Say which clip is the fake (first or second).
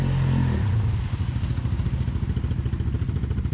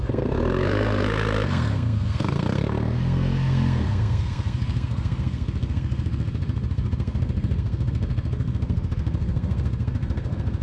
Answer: second